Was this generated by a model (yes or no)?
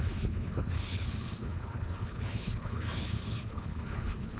yes